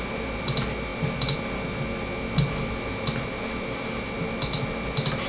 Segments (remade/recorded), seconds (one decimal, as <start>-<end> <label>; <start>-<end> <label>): 0.0-5.3 recorded